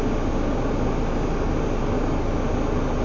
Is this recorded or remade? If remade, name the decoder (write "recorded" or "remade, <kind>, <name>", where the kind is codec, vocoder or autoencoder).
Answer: recorded